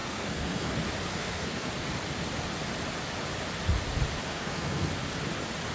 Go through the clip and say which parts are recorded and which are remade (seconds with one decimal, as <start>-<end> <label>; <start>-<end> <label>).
0.0-0.7 remade; 0.7-1.1 recorded; 1.1-1.7 remade; 1.7-4.3 recorded; 4.3-4.9 remade; 4.9-5.7 recorded